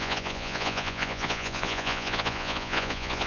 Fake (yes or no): yes